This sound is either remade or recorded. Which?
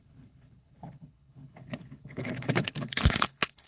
remade